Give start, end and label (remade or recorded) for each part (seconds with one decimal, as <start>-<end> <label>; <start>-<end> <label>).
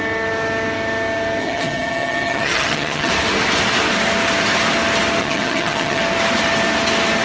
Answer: 0.0-1.4 recorded; 1.4-3.1 remade; 3.1-5.2 recorded; 5.2-6.0 remade; 6.0-7.2 recorded